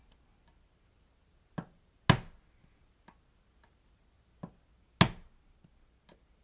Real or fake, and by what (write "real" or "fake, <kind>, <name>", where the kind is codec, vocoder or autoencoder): real